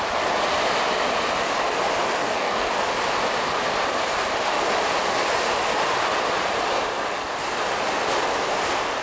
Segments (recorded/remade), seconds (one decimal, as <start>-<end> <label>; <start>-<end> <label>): 0.0-2.2 recorded; 2.2-2.7 remade; 2.7-9.0 recorded